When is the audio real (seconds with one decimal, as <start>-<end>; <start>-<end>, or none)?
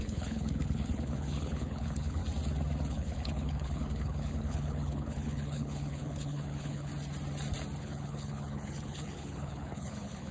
2.2-2.9; 6.9-7.8